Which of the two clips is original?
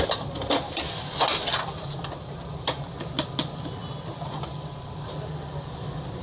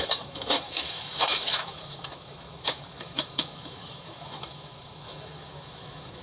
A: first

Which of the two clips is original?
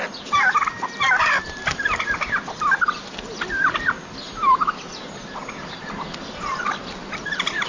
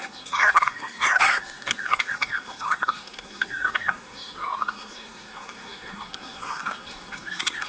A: first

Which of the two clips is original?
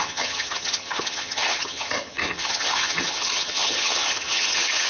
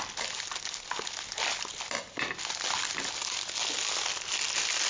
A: second